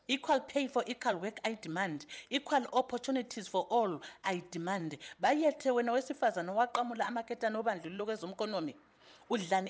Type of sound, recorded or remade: remade